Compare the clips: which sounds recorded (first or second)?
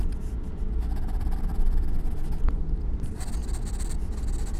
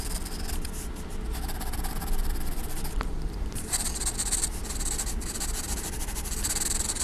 first